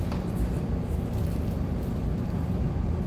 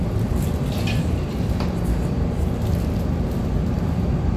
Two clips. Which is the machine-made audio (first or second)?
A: first